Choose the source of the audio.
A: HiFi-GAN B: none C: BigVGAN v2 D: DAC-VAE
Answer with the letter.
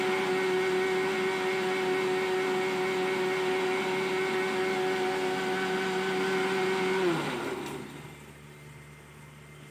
B